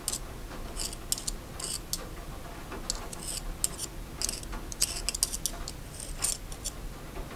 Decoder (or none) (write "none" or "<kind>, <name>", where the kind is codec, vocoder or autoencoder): none